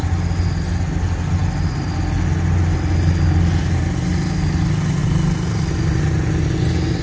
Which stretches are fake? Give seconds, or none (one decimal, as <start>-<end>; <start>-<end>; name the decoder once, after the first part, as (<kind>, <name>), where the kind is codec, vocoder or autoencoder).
none